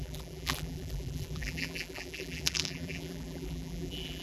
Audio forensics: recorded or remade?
remade